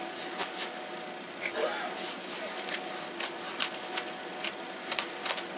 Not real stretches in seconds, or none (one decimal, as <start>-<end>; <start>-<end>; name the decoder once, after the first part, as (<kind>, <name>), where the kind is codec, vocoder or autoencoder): none